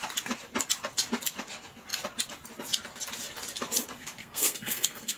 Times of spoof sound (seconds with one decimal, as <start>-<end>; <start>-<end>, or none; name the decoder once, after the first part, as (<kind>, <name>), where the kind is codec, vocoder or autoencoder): 4.2-5.2 (codec, SNAC)

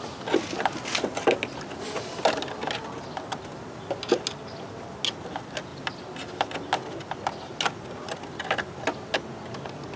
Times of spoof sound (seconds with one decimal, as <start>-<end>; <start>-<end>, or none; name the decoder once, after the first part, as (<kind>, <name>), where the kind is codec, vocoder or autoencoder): none

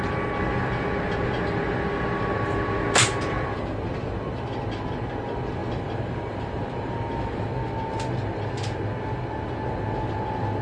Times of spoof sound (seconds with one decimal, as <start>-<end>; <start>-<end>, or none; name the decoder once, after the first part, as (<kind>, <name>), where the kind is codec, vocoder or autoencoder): 5.6-7.5 (vocoder, BigVGAN v2)

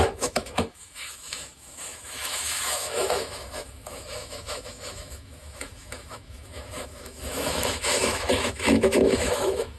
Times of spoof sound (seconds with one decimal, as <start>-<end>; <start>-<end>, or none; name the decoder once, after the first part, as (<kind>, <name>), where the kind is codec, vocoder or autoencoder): 0.0-9.8 (autoencoder, DAC-VAE)

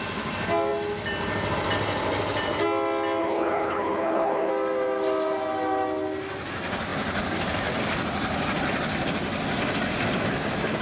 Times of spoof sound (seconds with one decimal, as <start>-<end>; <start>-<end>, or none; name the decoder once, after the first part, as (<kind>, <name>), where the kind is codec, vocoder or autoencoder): 3.2-4.5 (codec, HILCodec)

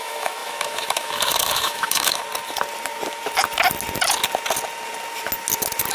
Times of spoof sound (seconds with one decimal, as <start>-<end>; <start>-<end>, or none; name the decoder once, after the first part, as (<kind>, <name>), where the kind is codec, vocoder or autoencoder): 0.0-2.2 (autoencoder, DAC-VAE)

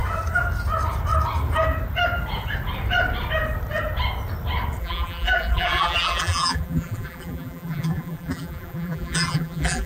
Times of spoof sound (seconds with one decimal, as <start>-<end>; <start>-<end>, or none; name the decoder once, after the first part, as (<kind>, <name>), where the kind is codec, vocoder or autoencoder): 4.8-9.9 (vocoder, BigVGAN v2)